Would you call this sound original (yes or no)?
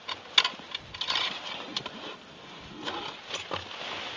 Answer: yes